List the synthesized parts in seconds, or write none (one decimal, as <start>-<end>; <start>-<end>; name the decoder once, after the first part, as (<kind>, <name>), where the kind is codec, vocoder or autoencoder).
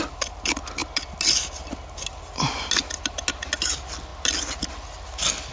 none